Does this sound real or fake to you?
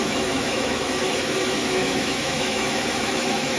fake